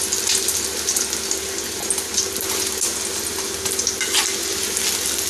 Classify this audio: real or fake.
real